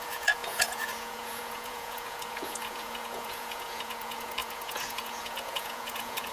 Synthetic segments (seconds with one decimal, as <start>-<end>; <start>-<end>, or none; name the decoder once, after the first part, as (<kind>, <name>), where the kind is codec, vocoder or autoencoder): 0.0-6.3 (vocoder, Vocos)